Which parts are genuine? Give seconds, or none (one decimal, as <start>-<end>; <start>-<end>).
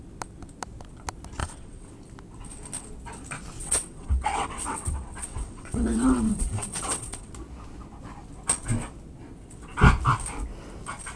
0.0-1.4; 1.9-3.6; 7.3-11.2